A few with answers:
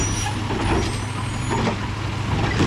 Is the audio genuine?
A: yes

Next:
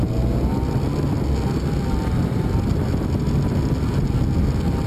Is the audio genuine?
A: yes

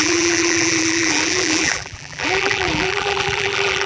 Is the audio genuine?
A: no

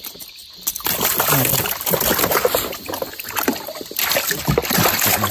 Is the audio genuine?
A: yes